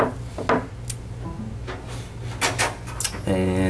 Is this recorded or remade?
recorded